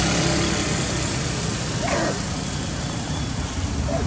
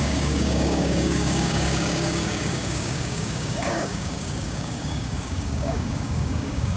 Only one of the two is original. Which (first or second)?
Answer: first